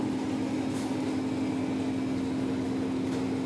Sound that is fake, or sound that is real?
real